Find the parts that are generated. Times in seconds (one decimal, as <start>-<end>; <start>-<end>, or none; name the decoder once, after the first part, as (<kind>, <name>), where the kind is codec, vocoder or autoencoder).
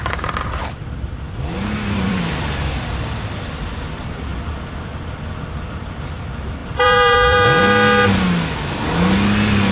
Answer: 0.0-3.6 (vocoder, BigVGAN v2); 6.6-7.6